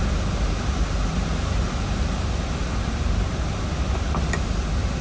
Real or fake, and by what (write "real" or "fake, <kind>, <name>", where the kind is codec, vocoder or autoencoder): real